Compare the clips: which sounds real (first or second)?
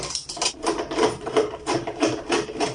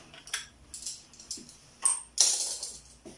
second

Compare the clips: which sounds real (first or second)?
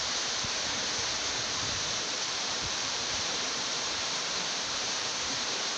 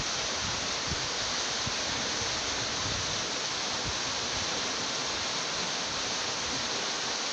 second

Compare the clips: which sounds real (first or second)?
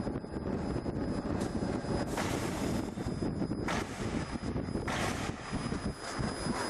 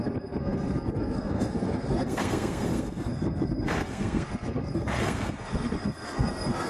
first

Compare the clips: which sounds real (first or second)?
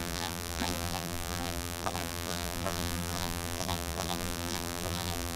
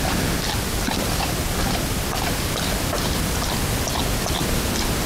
second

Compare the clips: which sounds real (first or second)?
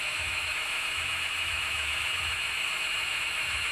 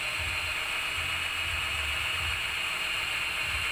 second